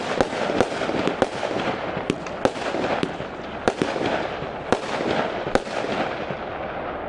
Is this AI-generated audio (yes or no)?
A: no